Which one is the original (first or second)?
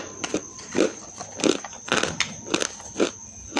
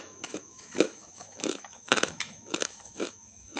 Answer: first